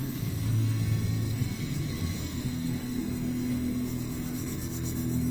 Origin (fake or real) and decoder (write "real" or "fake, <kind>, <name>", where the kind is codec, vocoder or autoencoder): fake, codec, SNAC